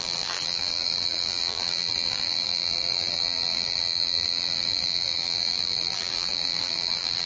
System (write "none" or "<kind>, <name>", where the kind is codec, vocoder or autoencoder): vocoder, BigVGAN v2